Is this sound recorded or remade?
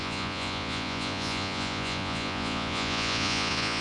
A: remade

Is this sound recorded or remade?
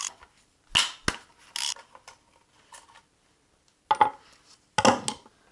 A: recorded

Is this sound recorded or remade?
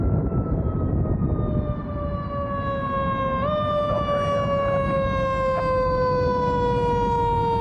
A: recorded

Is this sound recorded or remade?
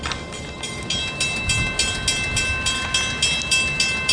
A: recorded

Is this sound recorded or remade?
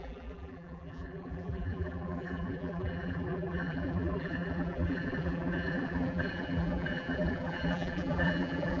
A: remade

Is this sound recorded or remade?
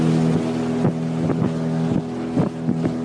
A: recorded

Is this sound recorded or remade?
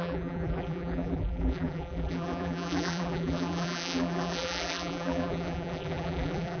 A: remade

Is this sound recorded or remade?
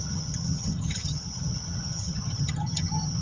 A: remade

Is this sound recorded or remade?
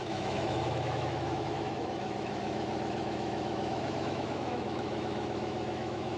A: remade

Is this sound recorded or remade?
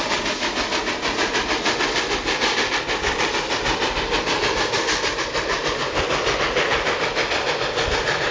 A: recorded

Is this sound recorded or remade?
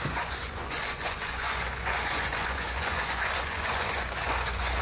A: remade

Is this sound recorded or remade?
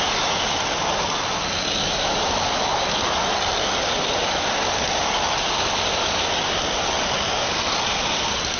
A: recorded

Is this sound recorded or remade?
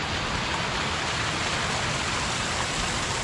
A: recorded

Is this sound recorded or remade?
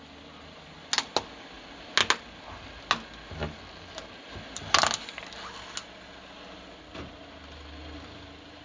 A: recorded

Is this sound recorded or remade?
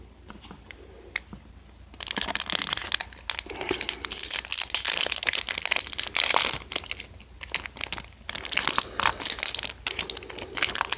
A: recorded